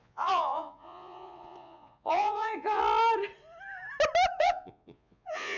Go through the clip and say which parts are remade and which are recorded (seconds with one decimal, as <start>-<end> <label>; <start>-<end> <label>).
0.0-2.8 remade; 2.8-4.4 recorded; 4.4-5.6 remade